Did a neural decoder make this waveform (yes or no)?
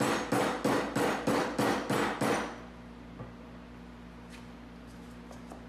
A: no